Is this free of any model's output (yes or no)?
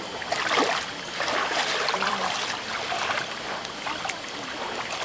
no